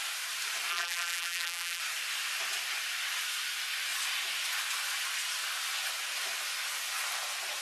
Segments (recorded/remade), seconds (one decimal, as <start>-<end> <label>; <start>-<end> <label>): 0.0-0.7 recorded; 0.7-1.8 remade; 1.8-7.6 recorded